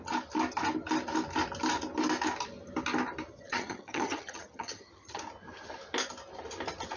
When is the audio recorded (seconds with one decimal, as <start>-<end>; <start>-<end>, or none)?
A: 0.0-3.3; 5.2-7.0